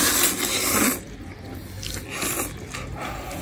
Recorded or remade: recorded